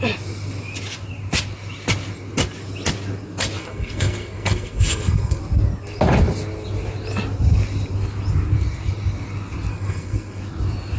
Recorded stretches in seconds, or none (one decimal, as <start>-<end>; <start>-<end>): 0.0-3.6; 5.4-9.7; 10.4-11.0